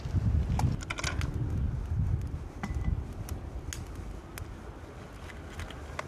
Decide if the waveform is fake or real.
real